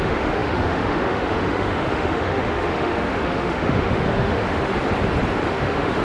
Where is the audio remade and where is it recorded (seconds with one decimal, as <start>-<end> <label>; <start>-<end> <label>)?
0.0-4.7 remade; 4.7-5.5 recorded; 5.5-6.0 remade